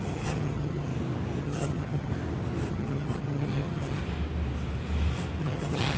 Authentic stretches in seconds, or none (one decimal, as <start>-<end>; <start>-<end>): 0.9-1.4; 2.1-2.7; 4.0-5.4